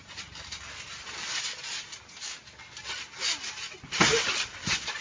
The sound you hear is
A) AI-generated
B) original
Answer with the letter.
B